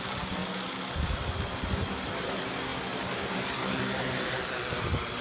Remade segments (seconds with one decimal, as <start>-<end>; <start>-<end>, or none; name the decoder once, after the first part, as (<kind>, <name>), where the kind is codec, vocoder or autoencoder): none